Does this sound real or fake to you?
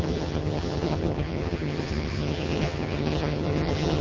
fake